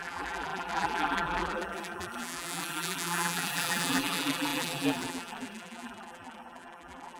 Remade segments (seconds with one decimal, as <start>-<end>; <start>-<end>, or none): 0.0-7.2